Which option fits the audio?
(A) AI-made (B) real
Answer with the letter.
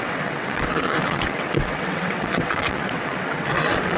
A